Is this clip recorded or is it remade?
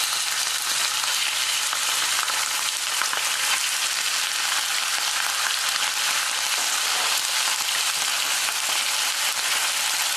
recorded